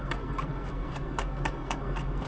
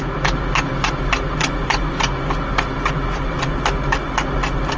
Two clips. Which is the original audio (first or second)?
second